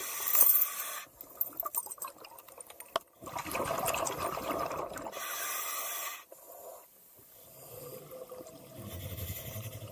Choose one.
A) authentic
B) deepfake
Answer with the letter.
A